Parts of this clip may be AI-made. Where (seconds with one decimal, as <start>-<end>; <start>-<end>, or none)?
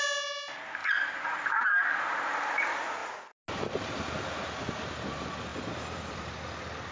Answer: 0.8-1.6; 5.5-6.3